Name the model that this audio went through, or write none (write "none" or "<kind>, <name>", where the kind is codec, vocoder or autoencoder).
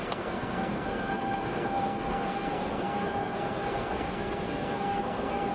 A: codec, SNAC